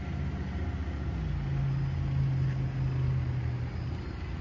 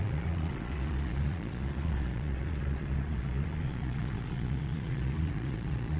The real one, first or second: first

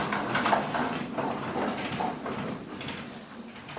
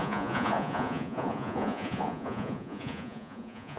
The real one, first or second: first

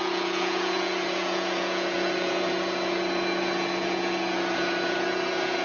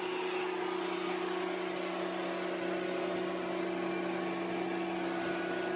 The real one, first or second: second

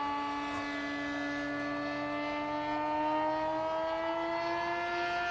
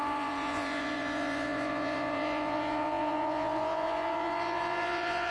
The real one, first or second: first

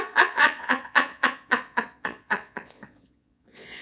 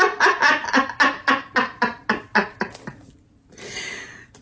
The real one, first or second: second